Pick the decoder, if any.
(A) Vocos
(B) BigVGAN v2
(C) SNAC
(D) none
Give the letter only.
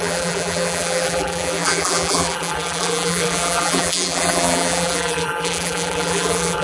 B